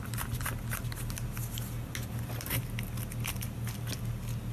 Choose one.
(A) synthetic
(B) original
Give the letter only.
B